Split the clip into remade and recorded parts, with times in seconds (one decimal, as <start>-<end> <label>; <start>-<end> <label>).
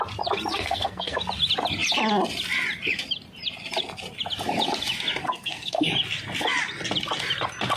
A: 0.0-0.5 recorded; 0.5-1.2 remade; 1.2-5.2 recorded; 5.2-5.9 remade; 5.9-7.8 recorded